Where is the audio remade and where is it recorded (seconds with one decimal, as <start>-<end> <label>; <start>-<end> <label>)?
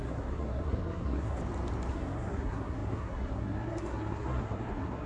0.0-1.4 remade; 1.4-1.9 recorded; 1.9-5.1 remade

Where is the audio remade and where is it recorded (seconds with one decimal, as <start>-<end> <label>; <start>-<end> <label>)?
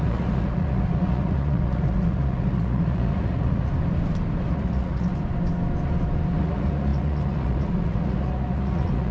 0.0-3.7 remade; 3.7-4.5 recorded; 4.5-5.1 remade; 5.1-6.4 recorded; 6.4-9.1 remade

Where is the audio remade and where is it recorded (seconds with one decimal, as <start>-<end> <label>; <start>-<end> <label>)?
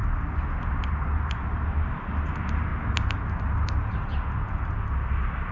0.0-5.5 recorded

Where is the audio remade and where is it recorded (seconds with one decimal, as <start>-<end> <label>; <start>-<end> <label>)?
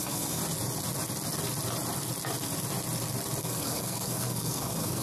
0.0-0.4 remade; 0.4-3.4 recorded; 3.4-5.0 remade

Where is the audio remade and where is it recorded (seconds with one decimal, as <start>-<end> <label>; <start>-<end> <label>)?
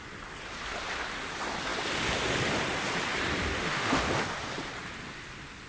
0.0-3.5 recorded; 3.5-4.0 remade; 4.0-5.7 recorded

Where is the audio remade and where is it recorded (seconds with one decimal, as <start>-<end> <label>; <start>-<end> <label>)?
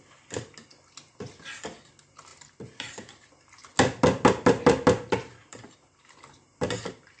0.0-2.3 recorded; 2.3-3.3 remade; 3.3-5.5 recorded; 5.5-6.7 remade; 6.7-7.2 recorded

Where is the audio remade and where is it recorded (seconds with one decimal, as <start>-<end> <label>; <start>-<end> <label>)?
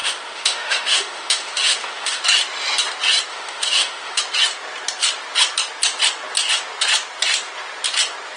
0.0-2.2 remade; 2.2-3.3 recorded; 3.3-4.2 remade; 4.2-8.4 recorded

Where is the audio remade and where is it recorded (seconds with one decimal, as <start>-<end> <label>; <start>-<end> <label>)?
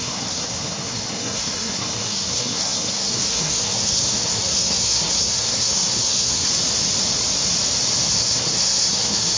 0.0-6.5 remade; 6.5-8.1 recorded; 8.1-9.4 remade